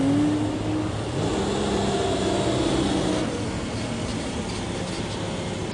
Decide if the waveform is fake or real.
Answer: real